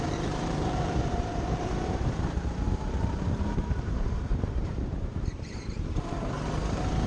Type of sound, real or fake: fake